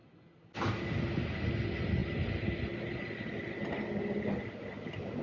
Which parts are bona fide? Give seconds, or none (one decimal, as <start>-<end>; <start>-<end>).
0.0-5.2